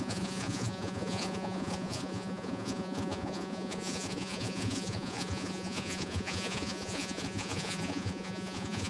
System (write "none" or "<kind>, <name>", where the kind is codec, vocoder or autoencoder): vocoder, Vocos